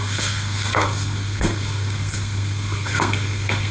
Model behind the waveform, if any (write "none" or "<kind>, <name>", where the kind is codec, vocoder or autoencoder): codec, SNAC